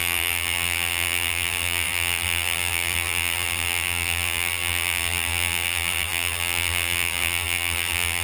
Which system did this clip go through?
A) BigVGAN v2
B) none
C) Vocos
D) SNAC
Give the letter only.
A